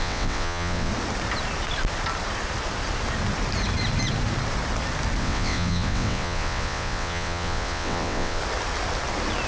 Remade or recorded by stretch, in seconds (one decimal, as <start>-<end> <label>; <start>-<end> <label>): 0.0-0.9 remade; 0.9-5.2 recorded; 5.2-8.4 remade; 8.4-9.5 recorded